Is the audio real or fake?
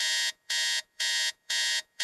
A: fake